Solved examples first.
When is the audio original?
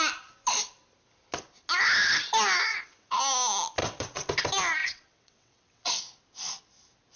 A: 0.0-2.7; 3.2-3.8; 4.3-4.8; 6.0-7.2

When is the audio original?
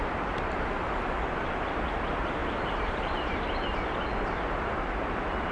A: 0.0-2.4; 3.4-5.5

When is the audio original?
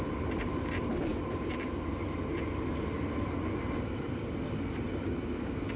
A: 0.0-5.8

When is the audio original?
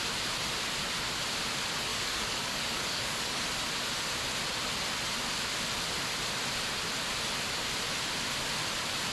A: 0.0-1.9; 3.4-9.1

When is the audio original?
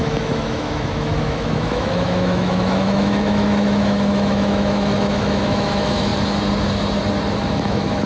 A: 6.1-7.5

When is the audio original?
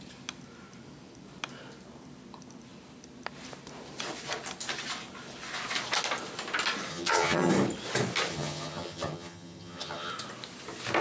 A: 0.0-6.9; 7.5-8.3; 10.1-11.0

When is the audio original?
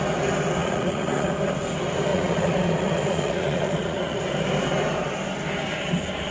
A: 0.0-0.6; 1.3-2.1; 4.2-6.3